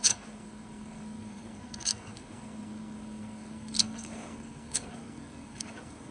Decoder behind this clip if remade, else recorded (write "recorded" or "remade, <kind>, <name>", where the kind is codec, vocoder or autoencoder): remade, codec, SNAC